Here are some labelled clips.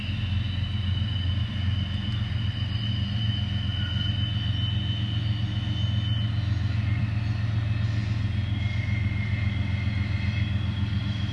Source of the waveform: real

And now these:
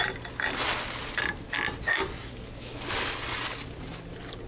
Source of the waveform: real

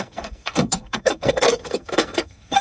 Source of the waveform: fake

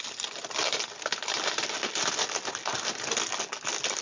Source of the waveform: real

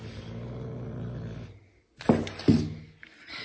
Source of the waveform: real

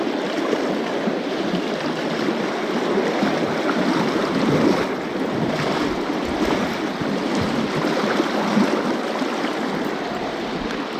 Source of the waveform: real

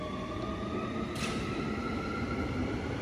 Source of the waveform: fake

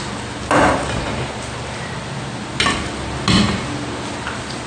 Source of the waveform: real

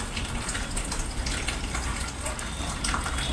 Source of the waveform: real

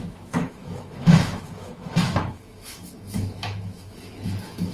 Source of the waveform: fake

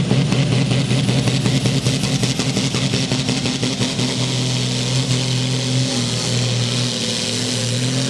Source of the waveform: real